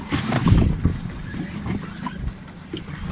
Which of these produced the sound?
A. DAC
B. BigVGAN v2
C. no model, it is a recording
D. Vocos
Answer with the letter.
C